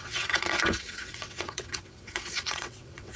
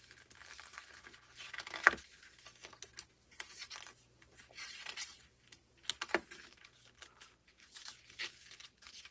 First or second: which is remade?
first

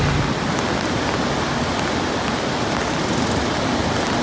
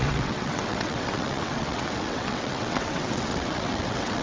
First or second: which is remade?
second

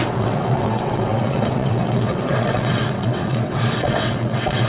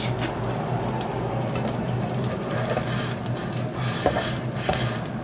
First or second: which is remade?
first